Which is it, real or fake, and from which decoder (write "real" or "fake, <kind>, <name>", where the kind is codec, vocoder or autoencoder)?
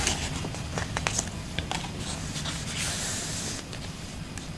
real